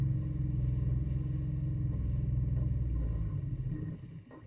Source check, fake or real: real